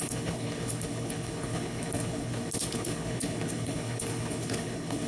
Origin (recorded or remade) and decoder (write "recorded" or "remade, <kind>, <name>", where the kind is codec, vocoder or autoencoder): remade, codec, HILCodec